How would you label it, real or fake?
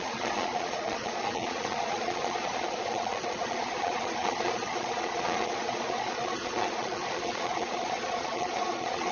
fake